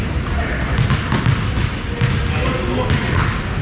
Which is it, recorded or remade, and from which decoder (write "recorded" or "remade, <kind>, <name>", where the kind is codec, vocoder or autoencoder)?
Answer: recorded